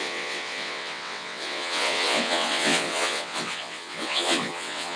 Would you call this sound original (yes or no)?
no